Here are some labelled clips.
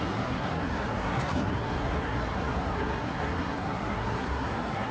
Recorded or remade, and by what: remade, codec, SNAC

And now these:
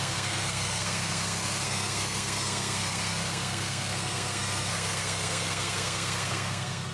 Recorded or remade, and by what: remade, codec, SNAC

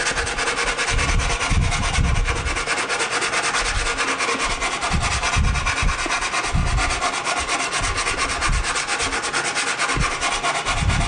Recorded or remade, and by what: recorded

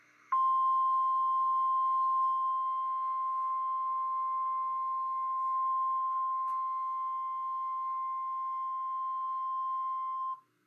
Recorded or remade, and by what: remade, codec, SNAC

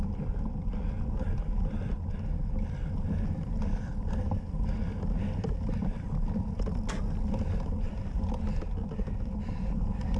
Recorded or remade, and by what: recorded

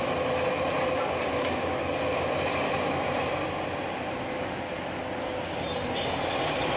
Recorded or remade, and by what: recorded